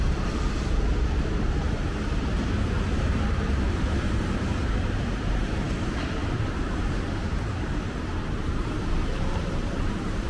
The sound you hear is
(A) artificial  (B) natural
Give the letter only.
A